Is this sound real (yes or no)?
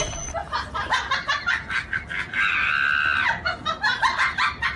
yes